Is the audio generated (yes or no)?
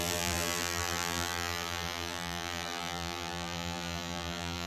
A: yes